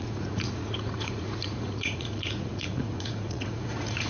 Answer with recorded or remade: remade